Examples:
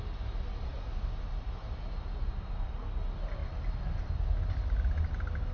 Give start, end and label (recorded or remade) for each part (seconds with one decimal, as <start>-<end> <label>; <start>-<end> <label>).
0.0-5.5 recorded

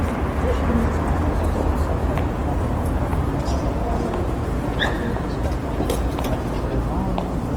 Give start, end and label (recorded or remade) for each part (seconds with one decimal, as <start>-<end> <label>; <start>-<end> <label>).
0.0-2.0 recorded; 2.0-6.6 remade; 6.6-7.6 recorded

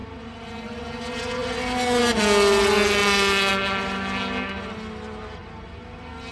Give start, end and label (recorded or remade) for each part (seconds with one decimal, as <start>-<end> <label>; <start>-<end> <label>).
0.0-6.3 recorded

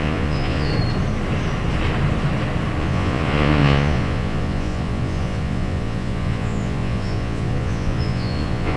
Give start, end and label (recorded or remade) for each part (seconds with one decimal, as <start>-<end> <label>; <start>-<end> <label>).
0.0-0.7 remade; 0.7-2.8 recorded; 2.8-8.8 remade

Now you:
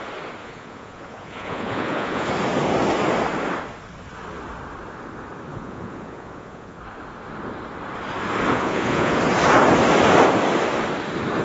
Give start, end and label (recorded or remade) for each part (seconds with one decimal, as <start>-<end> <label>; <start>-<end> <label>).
0.0-0.4 recorded; 0.4-2.3 remade; 2.3-5.5 recorded; 5.5-6.8 remade; 6.8-8.5 recorded; 8.5-9.2 remade; 9.2-11.4 recorded